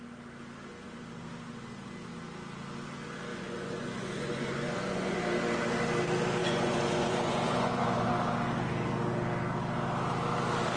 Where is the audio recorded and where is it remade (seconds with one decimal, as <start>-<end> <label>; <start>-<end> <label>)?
0.0-3.3 recorded; 3.3-5.2 remade; 5.2-6.4 recorded; 6.4-8.1 remade; 8.1-10.8 recorded